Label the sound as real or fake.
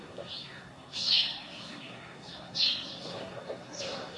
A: fake